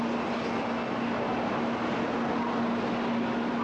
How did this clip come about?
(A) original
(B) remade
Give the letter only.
A